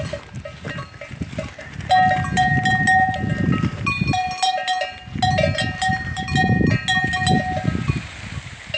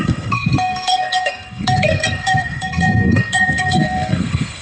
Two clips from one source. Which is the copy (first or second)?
second